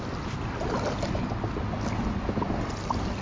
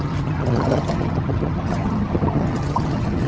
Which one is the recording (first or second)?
first